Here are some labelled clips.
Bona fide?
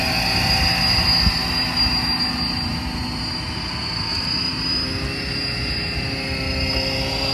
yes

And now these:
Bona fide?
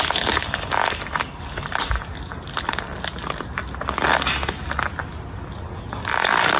yes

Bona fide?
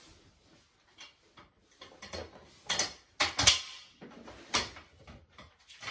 yes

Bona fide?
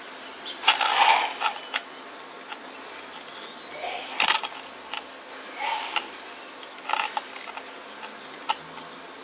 yes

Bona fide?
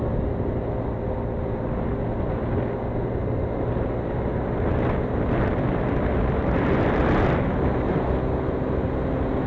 yes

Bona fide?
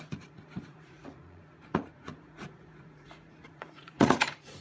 no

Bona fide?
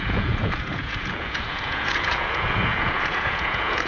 no